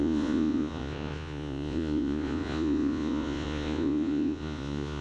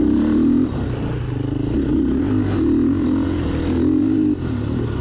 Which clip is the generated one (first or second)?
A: first